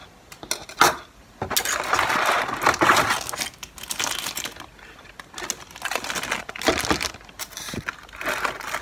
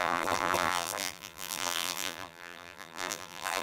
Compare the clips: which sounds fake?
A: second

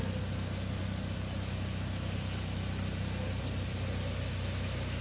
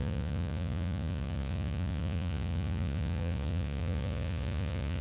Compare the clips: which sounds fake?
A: second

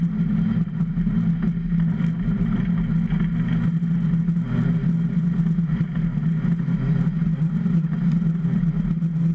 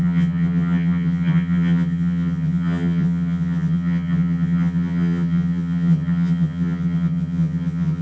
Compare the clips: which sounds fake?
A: second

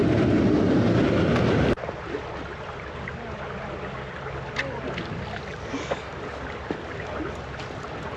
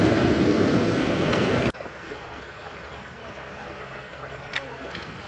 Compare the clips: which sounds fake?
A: second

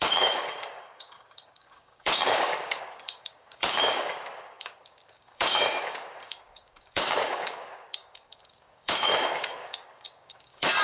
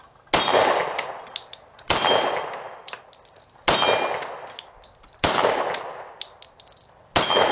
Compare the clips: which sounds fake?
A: first